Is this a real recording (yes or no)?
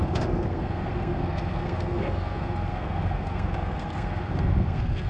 no